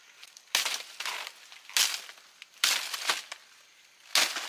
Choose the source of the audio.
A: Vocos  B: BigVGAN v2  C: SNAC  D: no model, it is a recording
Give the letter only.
D